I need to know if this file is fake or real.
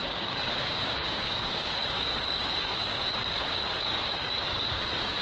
fake